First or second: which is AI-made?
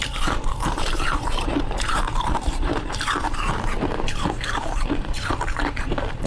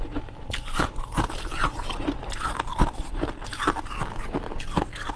first